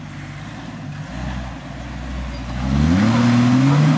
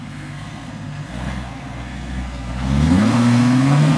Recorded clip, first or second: first